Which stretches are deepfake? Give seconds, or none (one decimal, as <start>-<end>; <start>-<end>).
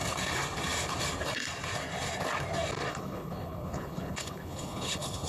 2.9-5.3